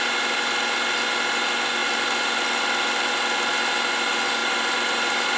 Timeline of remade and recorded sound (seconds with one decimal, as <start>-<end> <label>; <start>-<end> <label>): 0.0-4.4 recorded; 4.4-5.4 remade